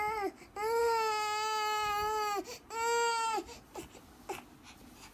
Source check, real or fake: real